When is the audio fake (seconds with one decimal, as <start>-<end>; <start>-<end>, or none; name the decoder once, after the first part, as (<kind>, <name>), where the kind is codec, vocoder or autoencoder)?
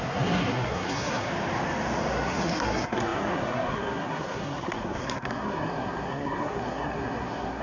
0.0-1.3 (codec, SNAC); 2.1-7.6